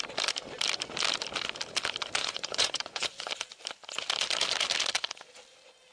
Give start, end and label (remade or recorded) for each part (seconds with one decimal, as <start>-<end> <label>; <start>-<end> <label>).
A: 0.0-2.2 recorded; 2.2-3.3 remade; 3.3-5.9 recorded